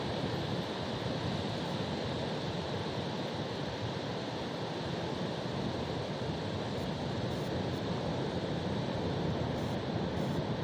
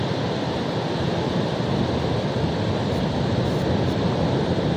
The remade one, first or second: first